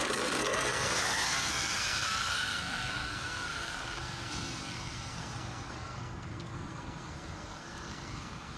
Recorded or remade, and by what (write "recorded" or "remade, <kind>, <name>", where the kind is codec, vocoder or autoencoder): remade, codec, SNAC